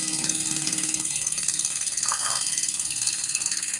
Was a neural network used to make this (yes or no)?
yes